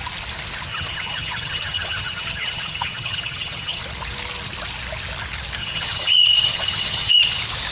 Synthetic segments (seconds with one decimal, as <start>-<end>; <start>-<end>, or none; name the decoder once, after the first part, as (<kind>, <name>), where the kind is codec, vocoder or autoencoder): 0.7-3.8 (vocoder, HiFi-GAN); 5.6-7.2